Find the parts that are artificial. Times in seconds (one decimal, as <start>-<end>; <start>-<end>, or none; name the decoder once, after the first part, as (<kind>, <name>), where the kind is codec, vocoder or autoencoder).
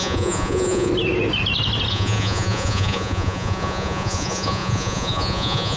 0.0-0.9 (vocoder, Vocos); 1.9-5.8